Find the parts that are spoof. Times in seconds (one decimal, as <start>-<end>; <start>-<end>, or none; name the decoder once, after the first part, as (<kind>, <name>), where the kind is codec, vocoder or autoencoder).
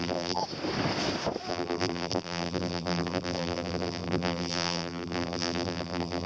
0.0-0.4 (vocoder, BigVGAN v2); 1.5-6.3